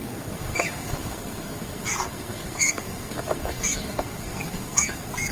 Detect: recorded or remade remade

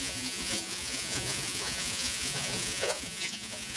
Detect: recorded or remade remade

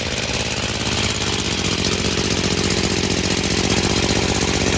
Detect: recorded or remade recorded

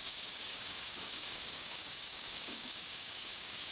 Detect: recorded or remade remade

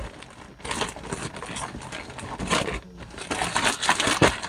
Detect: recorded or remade recorded